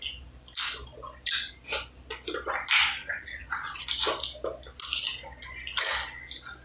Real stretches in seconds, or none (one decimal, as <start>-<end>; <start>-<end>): 0.0-3.0; 3.8-6.6